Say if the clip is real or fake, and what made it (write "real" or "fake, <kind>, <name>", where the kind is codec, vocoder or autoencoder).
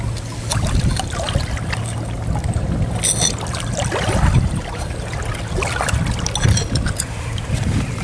real